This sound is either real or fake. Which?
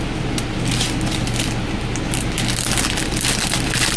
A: real